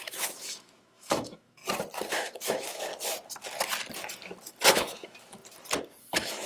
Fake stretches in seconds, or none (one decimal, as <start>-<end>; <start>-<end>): 0.0-1.6; 2.1-2.9; 4.7-5.4; 6.0-6.5